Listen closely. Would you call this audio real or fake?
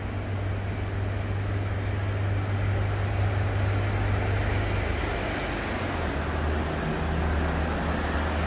real